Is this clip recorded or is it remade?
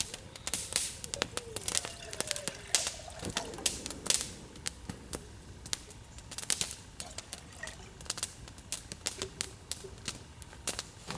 recorded